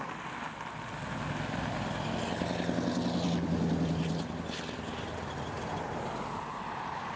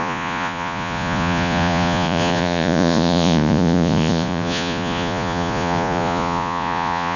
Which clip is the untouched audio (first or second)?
first